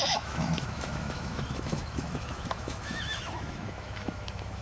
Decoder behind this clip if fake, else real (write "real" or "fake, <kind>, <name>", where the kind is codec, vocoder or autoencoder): fake, autoencoder, DAC-VAE